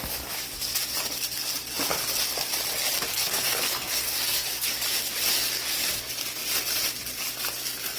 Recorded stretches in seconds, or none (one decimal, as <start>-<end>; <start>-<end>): 0.0-3.1; 4.7-8.0